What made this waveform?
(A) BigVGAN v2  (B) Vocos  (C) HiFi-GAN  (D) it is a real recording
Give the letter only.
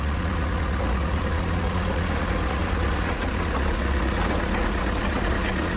B